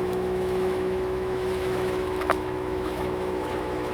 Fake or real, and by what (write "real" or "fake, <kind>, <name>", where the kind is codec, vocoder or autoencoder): fake, autoencoder, DAC-VAE